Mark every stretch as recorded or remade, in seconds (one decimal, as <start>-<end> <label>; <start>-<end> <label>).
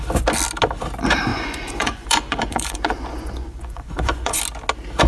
0.0-1.3 recorded; 1.3-4.4 remade; 4.4-5.1 recorded